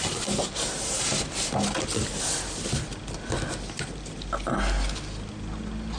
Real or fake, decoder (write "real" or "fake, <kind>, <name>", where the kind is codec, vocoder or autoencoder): real